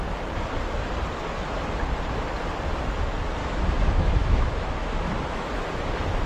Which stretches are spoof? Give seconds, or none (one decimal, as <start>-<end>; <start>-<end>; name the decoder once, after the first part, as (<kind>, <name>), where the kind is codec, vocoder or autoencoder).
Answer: 3.4-5.5 (autoencoder, DAC-VAE)